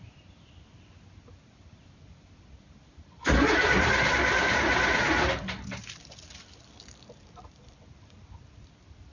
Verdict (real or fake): real